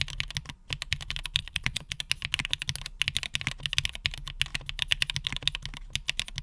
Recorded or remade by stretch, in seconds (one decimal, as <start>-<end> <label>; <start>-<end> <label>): 0.0-1.4 recorded; 1.4-2.0 remade; 2.0-6.4 recorded